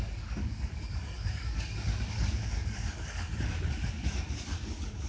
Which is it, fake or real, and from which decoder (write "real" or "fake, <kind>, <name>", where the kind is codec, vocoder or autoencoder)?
fake, codec, DAC